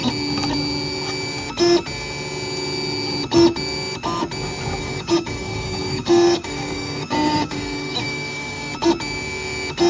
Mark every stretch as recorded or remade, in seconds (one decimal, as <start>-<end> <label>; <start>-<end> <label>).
0.0-4.8 recorded; 4.8-8.7 remade; 8.7-9.9 recorded